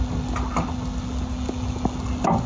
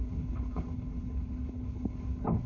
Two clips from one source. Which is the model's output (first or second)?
second